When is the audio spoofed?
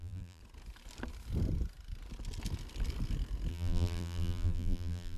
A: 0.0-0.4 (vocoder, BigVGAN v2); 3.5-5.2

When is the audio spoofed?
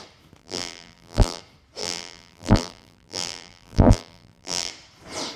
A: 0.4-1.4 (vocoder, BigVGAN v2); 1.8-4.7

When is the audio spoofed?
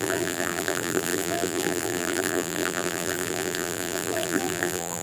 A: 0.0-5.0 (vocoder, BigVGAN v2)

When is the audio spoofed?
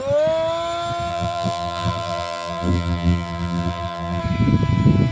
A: 1.1-4.2 (vocoder, BigVGAN v2)